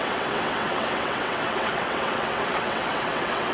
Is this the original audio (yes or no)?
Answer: no